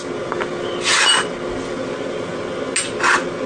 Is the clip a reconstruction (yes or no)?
no